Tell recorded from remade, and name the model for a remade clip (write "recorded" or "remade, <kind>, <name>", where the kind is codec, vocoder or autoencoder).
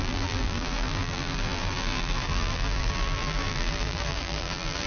remade, vocoder, BigVGAN v2